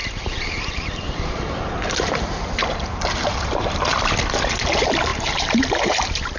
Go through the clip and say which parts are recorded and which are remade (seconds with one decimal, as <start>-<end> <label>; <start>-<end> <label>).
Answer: 0.0-3.8 remade; 3.8-5.1 recorded; 5.1-6.4 remade